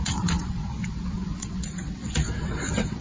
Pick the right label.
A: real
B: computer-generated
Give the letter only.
B